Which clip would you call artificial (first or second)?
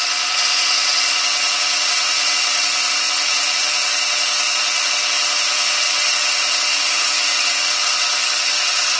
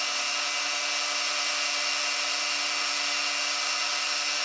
first